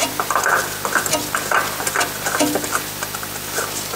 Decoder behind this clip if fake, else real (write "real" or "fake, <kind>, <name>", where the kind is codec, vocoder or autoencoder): real